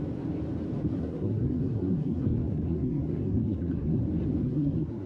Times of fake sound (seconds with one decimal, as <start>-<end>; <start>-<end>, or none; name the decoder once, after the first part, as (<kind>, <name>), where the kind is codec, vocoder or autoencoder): 0.9-4.0 (codec, SNAC); 4.4-5.1